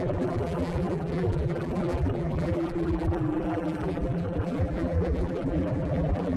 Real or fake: fake